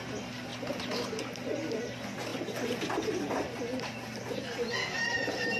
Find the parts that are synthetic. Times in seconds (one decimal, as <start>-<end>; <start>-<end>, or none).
0.5-1.2

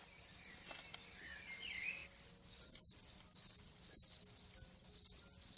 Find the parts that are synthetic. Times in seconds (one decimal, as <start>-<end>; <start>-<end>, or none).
none

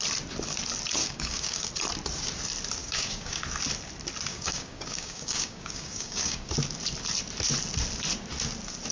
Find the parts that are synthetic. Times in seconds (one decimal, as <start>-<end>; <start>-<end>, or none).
1.0-1.7; 2.8-3.4; 4.3-6.5

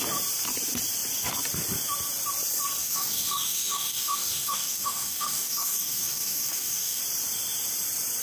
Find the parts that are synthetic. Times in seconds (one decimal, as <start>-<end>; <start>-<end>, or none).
2.8-7.0